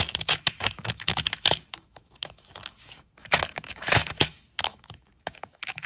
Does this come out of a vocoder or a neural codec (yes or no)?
yes